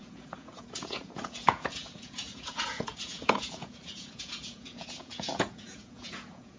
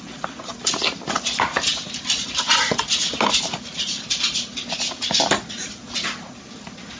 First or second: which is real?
second